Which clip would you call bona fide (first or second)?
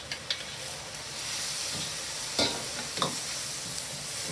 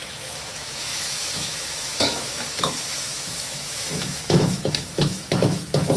first